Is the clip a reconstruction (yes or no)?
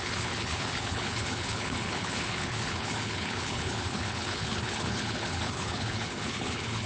yes